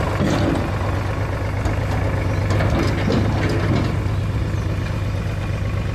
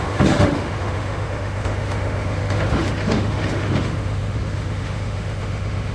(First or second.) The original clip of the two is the first